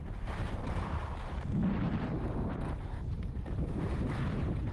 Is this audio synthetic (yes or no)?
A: yes